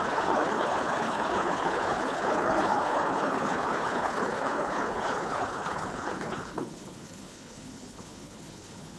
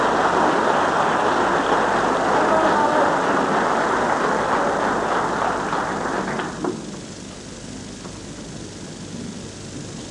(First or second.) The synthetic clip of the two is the first